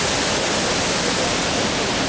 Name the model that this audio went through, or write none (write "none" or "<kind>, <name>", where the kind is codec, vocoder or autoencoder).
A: none